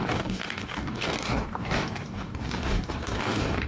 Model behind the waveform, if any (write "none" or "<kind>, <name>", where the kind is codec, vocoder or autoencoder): codec, DAC